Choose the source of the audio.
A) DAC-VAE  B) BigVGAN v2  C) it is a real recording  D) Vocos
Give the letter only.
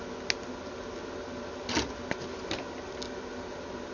C